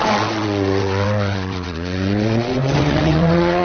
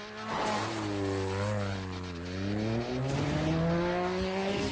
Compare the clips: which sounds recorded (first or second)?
second